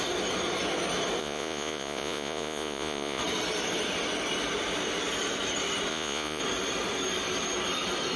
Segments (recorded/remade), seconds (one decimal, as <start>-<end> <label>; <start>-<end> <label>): 0.0-1.2 recorded; 1.2-3.2 remade; 3.2-5.9 recorded; 5.9-6.4 remade; 6.4-8.2 recorded